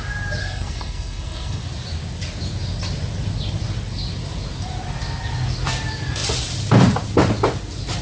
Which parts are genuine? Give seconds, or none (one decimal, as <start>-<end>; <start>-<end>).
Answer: 0.0-0.4; 1.6-8.0